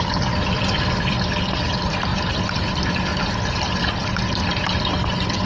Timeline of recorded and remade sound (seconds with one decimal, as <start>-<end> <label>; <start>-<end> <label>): 0.0-3.1 remade; 3.1-3.6 recorded; 3.6-5.5 remade